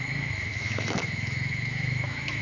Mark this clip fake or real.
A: fake